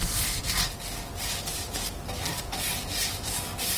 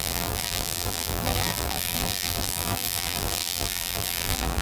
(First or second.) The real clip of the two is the first